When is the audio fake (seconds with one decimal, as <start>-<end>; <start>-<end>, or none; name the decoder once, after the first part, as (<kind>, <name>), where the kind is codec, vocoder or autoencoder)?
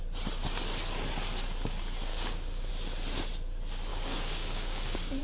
2.1-2.7 (codec, DAC); 3.9-5.2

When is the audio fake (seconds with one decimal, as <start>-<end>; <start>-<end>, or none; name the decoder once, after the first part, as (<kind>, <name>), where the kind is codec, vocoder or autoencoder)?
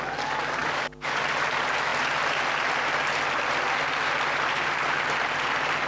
0.6-1.2 (codec, DAC)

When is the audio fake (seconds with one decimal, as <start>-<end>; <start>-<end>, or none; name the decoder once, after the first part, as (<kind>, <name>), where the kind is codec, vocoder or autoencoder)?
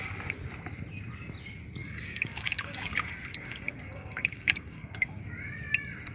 1.8-5.2 (codec, DAC)